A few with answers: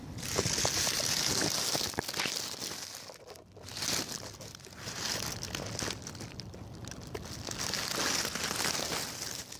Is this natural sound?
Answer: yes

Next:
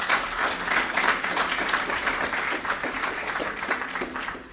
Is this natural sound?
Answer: yes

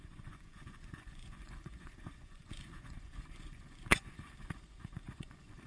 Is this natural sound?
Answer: no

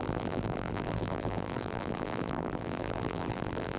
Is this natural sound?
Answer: no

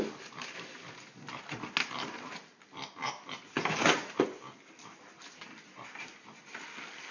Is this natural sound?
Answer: yes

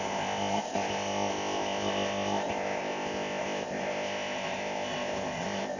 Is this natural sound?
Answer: no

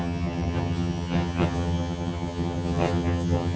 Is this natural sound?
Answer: no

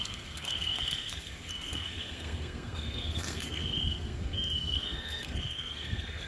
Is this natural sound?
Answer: no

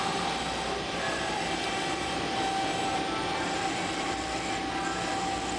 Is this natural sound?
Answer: yes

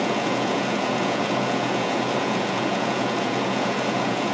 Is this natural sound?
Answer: no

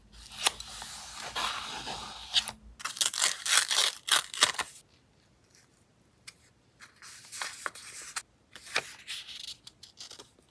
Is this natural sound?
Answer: yes